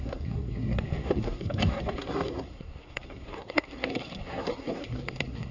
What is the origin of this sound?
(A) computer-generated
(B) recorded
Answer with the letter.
A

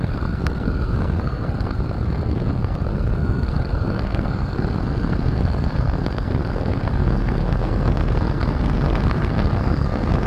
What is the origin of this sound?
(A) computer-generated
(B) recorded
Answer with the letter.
A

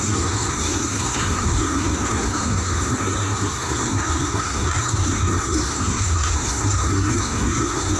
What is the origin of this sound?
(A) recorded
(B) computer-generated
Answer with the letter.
B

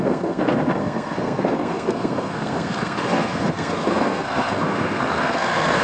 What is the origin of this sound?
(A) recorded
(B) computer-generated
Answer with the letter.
B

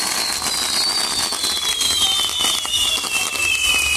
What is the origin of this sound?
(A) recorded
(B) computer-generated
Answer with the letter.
A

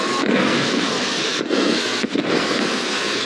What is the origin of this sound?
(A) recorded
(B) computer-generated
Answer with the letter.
B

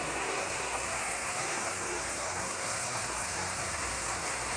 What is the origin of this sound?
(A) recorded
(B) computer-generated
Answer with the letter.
B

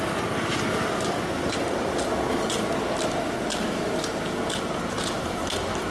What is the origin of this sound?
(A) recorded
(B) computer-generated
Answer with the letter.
A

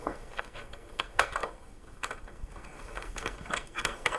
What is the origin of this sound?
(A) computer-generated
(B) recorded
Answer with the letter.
A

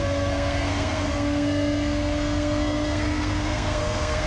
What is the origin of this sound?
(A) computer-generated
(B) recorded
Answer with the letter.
A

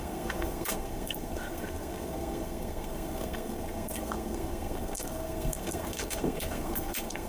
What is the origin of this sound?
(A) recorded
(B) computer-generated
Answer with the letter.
B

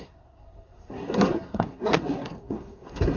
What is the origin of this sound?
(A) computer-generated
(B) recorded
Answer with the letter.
A